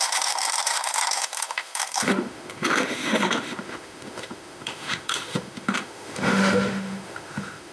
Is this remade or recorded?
remade